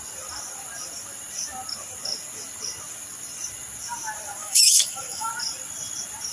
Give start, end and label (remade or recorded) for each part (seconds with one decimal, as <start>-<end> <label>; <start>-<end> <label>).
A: 0.0-4.4 recorded; 4.4-5.3 remade; 5.3-6.3 recorded